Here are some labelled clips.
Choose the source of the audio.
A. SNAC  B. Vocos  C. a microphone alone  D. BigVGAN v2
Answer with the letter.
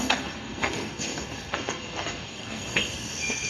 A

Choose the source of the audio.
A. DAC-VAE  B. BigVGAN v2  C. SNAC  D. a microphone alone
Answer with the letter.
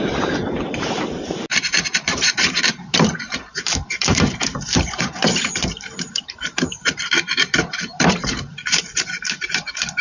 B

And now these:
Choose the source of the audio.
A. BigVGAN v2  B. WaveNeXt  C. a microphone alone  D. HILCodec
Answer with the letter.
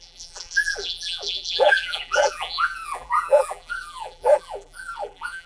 A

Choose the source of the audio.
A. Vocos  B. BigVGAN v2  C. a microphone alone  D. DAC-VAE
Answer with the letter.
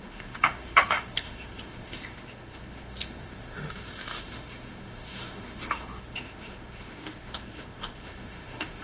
D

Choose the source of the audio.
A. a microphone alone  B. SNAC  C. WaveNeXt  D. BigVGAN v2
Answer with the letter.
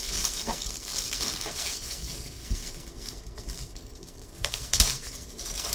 B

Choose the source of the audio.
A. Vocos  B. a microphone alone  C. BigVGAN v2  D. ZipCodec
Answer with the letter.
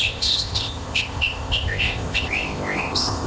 D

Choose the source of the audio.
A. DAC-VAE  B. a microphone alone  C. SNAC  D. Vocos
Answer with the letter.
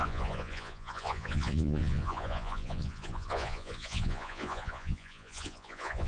D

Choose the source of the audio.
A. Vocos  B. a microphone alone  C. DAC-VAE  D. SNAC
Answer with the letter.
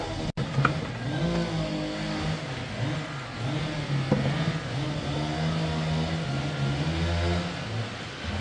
B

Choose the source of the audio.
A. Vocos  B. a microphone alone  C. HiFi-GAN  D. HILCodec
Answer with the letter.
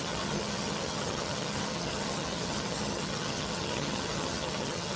C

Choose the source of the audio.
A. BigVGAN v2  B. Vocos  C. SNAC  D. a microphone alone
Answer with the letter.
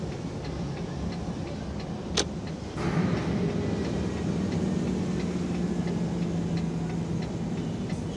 D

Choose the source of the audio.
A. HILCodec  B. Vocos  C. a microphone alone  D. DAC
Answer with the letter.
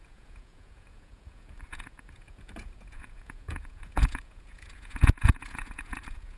B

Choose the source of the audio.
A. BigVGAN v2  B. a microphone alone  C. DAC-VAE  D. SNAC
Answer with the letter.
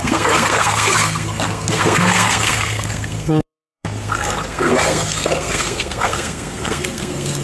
D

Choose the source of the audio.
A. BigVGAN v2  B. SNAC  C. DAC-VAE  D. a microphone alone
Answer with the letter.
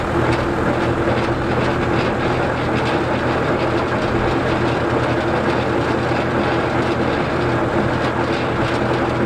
D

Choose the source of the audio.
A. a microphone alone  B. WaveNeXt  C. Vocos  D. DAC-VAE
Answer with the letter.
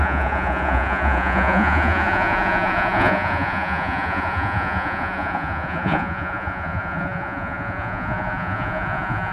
C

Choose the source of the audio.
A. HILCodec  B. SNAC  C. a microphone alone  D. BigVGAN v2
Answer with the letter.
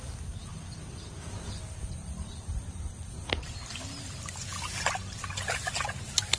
C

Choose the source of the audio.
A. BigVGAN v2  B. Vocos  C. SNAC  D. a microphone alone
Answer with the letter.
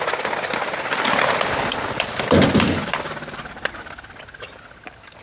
D